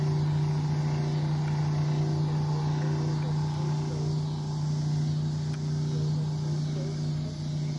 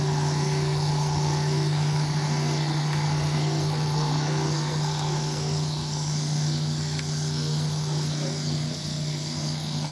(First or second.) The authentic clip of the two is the first